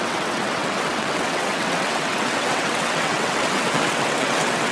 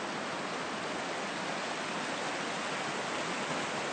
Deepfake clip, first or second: first